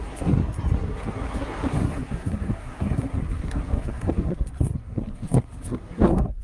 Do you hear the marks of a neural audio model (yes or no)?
yes